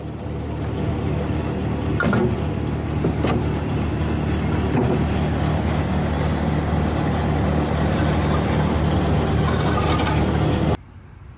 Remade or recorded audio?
recorded